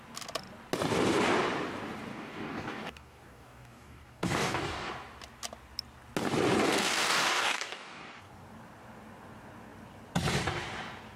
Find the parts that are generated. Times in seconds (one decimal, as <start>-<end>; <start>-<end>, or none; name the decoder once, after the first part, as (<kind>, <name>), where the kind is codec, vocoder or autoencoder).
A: 2.1-4.9 (codec, DAC); 6.6-8.3

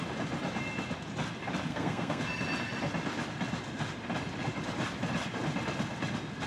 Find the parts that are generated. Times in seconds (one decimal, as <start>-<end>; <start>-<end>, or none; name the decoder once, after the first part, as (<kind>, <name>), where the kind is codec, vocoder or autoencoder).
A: 1.7-2.2 (codec, SNAC)

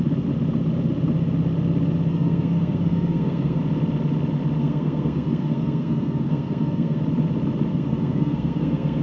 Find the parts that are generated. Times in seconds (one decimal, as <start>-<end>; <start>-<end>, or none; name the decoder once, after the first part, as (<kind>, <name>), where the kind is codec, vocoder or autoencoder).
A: 2.1-3.6 (codec, SNAC); 4.6-7.0; 7.7-9.0

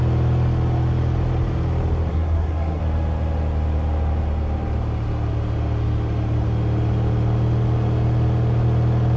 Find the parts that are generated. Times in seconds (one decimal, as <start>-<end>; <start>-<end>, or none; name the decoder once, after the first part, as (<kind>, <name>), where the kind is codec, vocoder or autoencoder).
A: 2.1-2.8 (codec, SNAC)

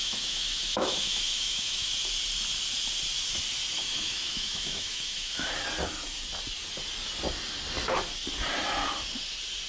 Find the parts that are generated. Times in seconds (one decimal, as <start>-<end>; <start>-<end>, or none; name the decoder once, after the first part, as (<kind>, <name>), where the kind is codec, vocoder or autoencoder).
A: 0.0-1.9 (autoencoder, DAC-VAE); 3.8-5.5

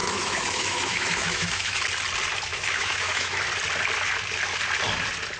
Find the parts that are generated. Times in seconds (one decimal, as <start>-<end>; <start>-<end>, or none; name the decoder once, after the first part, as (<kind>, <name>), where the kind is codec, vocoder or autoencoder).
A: 0.0-1.8 (autoencoder, DAC-VAE); 2.5-3.4

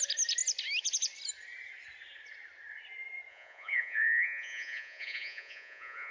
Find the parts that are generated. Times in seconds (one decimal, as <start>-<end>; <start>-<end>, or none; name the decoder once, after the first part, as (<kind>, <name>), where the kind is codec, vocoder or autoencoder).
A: 3.3-6.1 (vocoder, Vocos)